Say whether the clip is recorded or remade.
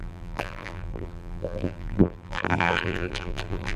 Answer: remade